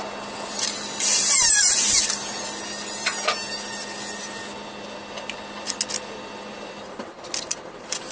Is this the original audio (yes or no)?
yes